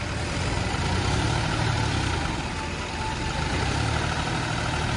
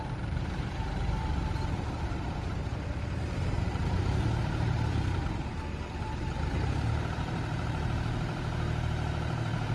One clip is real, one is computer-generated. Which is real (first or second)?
first